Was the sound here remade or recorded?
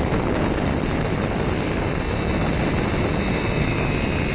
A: recorded